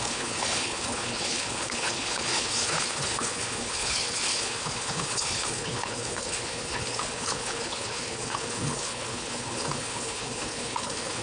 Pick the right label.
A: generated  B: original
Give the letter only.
A